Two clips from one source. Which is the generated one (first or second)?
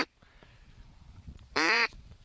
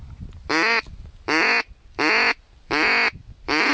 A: first